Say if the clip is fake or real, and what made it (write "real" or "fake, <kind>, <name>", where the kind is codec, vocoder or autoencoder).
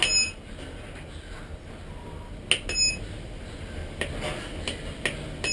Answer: real